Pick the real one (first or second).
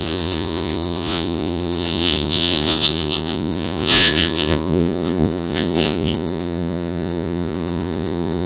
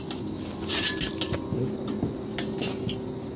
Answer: second